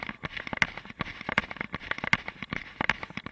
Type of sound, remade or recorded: recorded